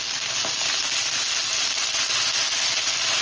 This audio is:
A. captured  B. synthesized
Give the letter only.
A